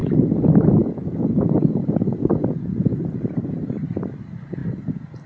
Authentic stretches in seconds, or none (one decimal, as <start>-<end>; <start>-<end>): 0.0-2.4; 3.1-5.3